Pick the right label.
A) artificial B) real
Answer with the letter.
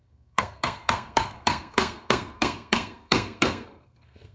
A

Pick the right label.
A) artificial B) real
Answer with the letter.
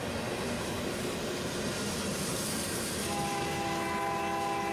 B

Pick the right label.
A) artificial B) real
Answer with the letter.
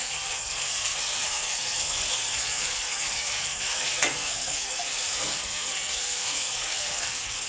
A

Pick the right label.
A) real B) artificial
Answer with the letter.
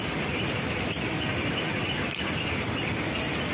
A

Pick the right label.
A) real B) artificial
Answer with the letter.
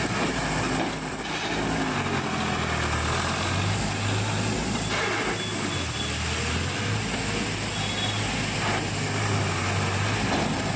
A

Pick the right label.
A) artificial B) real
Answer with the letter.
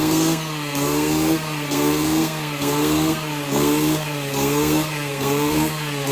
A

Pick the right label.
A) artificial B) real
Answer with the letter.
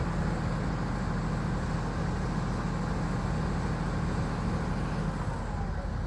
B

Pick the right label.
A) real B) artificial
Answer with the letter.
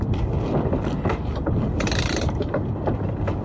A